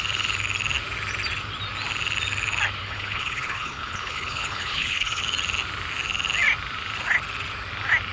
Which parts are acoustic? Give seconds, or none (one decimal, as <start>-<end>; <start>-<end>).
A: 0.0-2.8; 5.2-8.1